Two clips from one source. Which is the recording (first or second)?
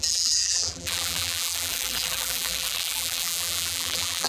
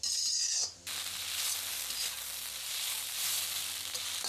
second